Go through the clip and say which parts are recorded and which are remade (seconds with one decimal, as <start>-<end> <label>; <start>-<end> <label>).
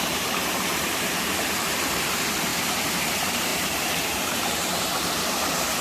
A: 0.0-2.5 remade; 2.5-3.0 recorded; 3.0-5.8 remade